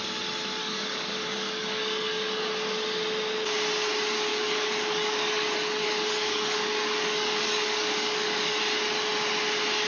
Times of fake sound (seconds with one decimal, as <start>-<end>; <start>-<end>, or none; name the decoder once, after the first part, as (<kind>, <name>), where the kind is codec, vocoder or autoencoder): 0.6-2.5 (codec, DAC); 4.3-8.6